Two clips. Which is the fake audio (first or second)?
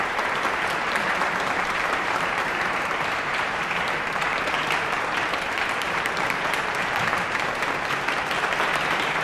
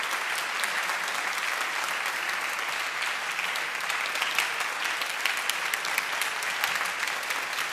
first